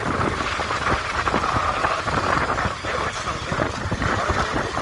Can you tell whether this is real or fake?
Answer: fake